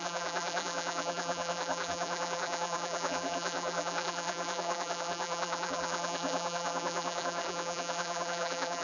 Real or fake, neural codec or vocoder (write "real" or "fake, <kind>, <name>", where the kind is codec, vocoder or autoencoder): fake, vocoder, BigVGAN v2